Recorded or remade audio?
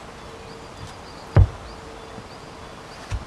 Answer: recorded